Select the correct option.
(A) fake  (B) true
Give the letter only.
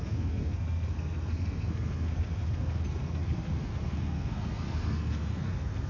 A